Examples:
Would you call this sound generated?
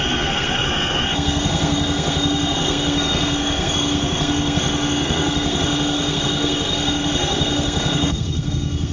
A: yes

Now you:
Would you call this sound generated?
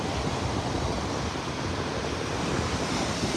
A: no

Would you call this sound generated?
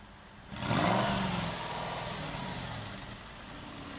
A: no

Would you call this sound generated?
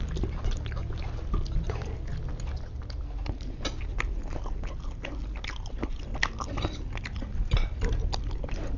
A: no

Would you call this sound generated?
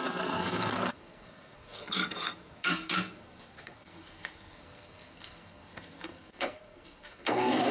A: yes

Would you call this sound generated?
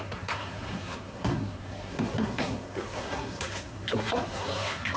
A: yes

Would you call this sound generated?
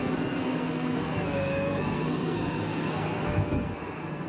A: yes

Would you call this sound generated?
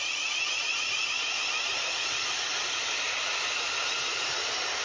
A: no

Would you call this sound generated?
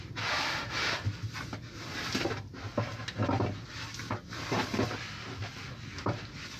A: no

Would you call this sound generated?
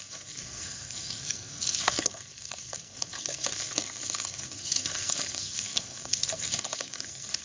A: yes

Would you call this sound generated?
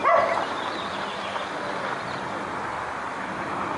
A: no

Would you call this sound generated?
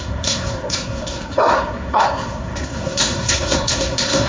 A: yes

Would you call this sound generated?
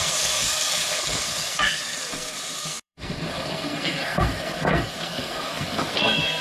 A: yes